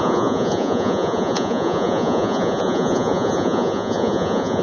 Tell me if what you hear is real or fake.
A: fake